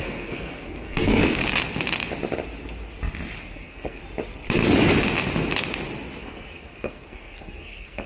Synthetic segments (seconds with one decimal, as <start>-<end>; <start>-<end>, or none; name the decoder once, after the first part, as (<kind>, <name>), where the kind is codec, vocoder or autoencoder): 0.0-1.4 (codec, SNAC); 3.4-4.0; 6.2-8.1